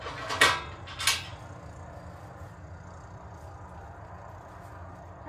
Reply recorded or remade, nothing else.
recorded